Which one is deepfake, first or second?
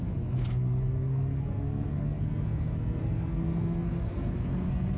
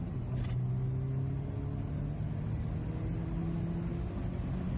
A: first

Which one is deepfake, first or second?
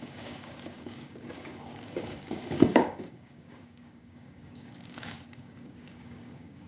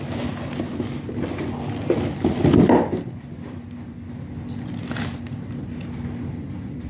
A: first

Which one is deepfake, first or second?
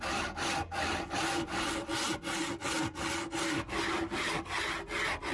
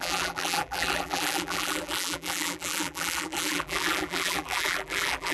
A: second